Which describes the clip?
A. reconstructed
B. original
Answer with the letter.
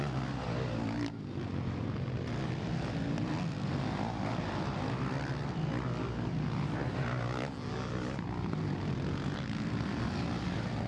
B